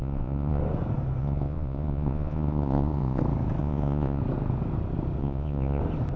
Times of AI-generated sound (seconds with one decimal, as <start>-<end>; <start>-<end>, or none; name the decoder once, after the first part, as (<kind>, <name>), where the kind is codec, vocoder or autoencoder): 0.0-0.6 (vocoder, Vocos); 1.2-3.2; 3.6-4.2; 5.2-5.8